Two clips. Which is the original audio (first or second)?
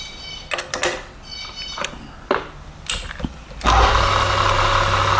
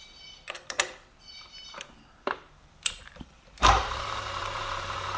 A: first